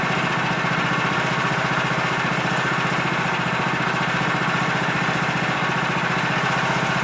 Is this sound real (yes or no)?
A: yes